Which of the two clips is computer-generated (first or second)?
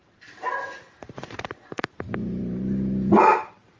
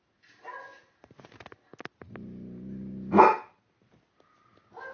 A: first